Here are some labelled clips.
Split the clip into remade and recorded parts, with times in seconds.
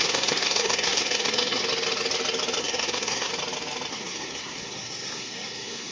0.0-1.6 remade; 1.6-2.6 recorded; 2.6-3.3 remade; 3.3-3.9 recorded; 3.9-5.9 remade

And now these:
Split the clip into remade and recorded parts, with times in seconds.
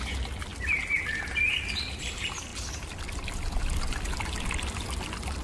0.0-5.4 recorded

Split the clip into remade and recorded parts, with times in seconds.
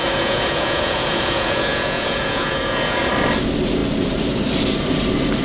0.0-3.1 remade; 3.1-5.4 recorded